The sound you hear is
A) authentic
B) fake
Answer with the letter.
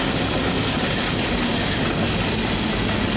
A